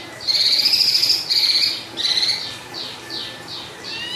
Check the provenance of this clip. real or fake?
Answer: real